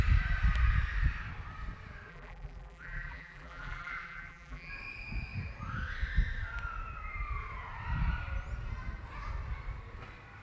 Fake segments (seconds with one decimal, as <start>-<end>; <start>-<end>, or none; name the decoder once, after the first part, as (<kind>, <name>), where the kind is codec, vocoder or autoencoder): 2.1-4.7 (vocoder, BigVGAN v2)

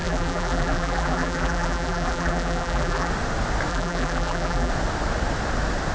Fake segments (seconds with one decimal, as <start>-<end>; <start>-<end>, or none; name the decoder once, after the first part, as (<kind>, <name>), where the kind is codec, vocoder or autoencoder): 0.0-3.1 (vocoder, BigVGAN v2); 3.7-4.7

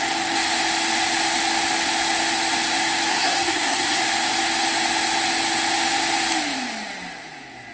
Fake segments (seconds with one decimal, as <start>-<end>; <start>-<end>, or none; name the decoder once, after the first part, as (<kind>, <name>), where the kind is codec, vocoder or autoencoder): 3.1-4.0 (codec, SNAC)

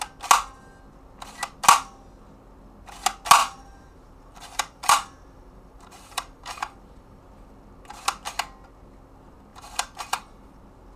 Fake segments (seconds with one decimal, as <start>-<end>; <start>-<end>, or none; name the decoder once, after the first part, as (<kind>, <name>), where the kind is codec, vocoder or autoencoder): 3.4-7.2 (vocoder, BigVGAN v2); 9.5-10.6

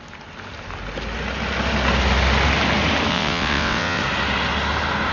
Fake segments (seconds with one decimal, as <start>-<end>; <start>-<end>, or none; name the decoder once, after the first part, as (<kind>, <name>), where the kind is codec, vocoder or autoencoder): 3.1-4.0 (vocoder, WaveNeXt)